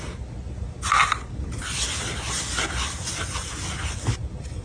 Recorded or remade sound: recorded